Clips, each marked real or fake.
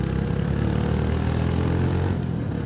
real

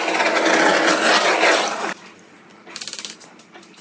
real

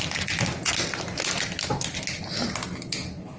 real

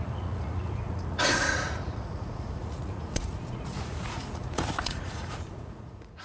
fake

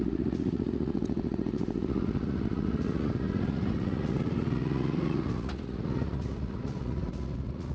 fake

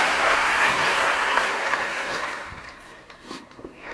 fake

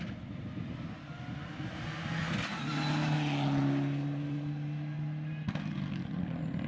real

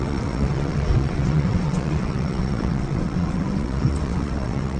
fake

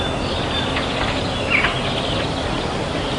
real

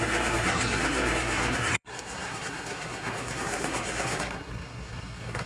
fake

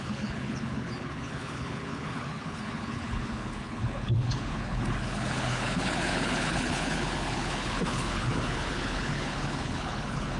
fake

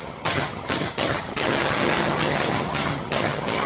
fake